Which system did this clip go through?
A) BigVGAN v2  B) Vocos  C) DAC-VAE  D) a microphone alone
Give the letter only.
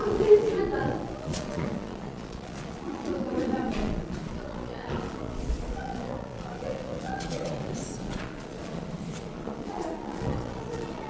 B